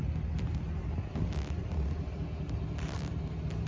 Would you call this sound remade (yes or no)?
no